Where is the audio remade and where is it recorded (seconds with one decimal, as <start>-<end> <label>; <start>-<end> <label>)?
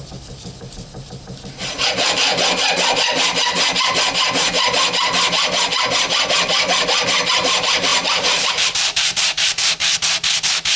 0.0-2.3 remade; 2.3-7.3 recorded; 7.3-9.8 remade; 9.8-10.4 recorded; 10.4-10.8 remade